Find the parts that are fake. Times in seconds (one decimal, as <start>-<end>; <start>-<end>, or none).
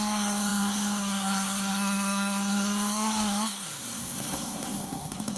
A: 0.0-5.4